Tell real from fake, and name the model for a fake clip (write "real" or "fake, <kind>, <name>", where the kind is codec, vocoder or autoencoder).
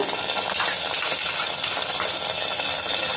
real